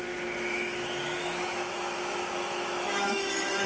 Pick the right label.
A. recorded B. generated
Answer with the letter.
B